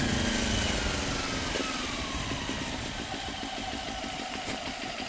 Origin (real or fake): real